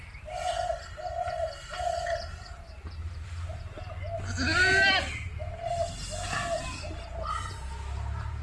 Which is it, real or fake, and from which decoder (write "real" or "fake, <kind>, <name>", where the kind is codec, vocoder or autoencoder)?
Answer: real